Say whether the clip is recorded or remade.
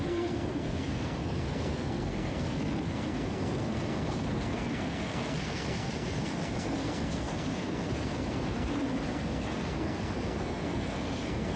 remade